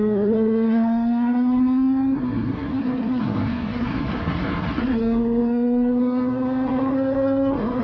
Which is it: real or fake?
fake